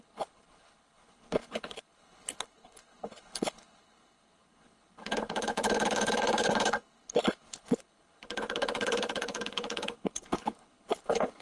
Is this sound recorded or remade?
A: remade